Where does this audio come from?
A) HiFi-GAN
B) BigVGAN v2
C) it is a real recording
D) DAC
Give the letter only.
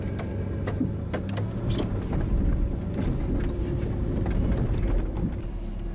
C